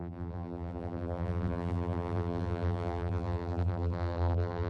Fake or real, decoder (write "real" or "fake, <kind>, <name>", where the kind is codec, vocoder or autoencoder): fake, vocoder, BigVGAN v2